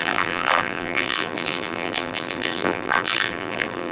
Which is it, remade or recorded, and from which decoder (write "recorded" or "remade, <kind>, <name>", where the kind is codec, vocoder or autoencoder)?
remade, vocoder, BigVGAN v2